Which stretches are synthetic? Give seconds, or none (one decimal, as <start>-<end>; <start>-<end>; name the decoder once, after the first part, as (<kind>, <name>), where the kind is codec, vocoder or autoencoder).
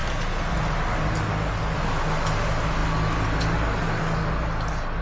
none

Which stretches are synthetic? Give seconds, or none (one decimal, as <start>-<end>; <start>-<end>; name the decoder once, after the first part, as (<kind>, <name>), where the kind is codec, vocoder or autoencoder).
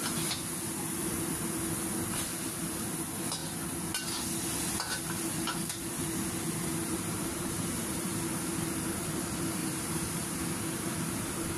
6.8-8.2 (vocoder, BigVGAN v2); 9.6-10.5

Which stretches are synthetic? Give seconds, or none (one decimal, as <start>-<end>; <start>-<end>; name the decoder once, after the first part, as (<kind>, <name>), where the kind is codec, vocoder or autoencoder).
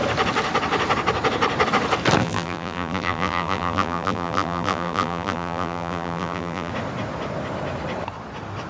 2.2-6.7 (vocoder, BigVGAN v2)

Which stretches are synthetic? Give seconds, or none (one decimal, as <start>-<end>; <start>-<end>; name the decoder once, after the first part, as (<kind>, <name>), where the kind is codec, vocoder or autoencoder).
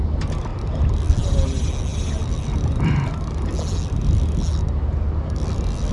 1.9-2.9 (vocoder, BigVGAN v2)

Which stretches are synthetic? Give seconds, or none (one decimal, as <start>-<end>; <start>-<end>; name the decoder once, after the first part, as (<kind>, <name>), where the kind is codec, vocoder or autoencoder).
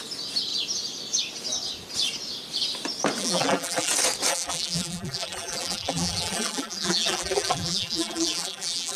3.2-3.9 (vocoder, BigVGAN v2); 4.3-9.0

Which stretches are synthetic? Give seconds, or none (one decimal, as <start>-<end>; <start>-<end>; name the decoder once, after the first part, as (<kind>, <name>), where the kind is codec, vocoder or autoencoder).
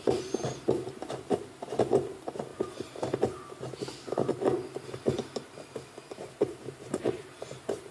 2.5-3.8 (vocoder, BigVGAN v2); 6.0-7.9